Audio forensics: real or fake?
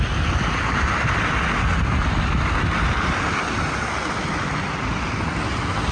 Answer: real